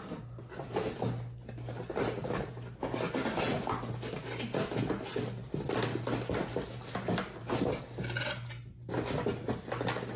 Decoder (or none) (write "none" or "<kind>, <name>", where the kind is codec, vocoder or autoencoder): none